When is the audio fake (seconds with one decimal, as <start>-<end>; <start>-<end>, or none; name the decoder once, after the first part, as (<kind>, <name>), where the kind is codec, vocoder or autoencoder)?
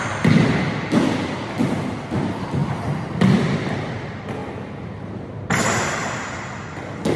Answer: none